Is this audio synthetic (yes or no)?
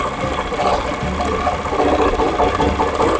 no